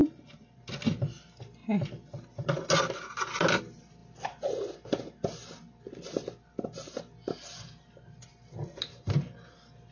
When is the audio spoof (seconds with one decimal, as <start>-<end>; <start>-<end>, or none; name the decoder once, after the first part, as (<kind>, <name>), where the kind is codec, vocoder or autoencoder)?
0.0-0.6 (vocoder, BigVGAN v2)